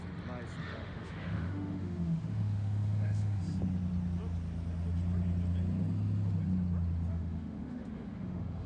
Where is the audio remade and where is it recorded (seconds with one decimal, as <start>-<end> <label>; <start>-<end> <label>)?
0.0-0.6 recorded; 0.6-3.4 remade; 3.4-7.1 recorded; 7.1-8.7 remade